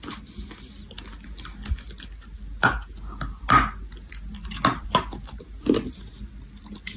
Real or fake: real